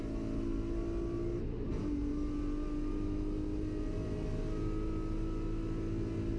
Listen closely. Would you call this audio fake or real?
real